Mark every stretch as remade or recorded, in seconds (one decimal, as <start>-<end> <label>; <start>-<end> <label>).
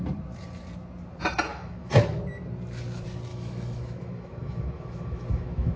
0.0-1.5 recorded; 1.5-2.2 remade; 2.2-3.3 recorded; 3.3-5.8 remade